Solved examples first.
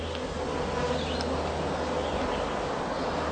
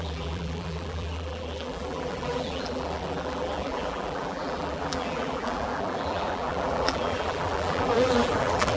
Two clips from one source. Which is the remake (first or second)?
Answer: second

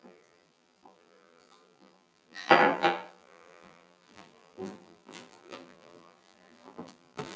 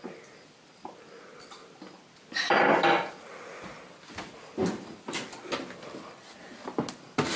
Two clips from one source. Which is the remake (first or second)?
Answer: first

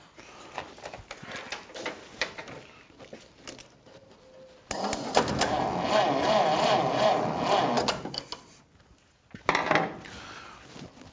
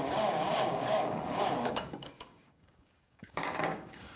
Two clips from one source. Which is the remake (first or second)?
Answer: second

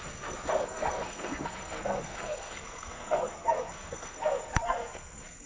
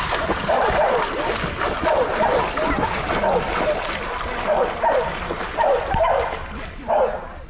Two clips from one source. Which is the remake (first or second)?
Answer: first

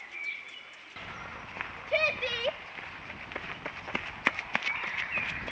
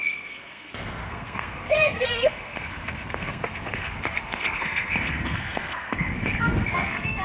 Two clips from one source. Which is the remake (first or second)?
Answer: second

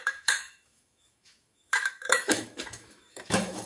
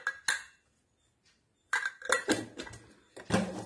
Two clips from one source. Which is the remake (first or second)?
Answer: first